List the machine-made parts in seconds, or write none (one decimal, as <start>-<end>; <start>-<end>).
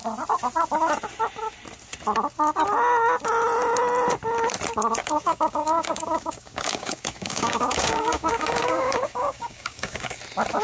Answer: 5.0-10.2